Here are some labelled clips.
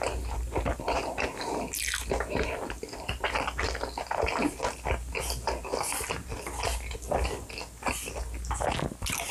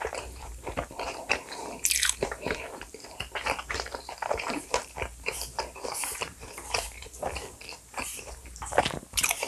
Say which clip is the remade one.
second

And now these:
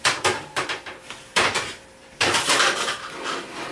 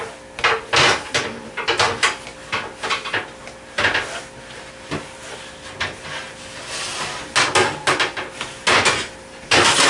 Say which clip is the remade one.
first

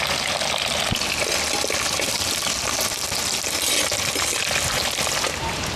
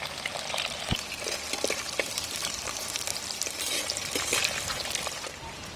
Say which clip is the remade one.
second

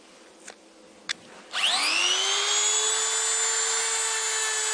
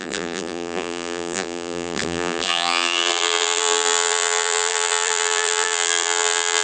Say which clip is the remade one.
second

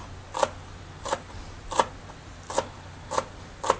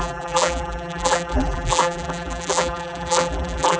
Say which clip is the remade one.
second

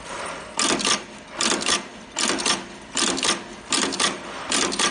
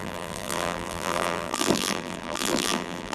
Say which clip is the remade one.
second